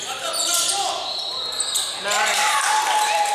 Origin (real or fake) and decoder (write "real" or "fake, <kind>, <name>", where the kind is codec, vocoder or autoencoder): real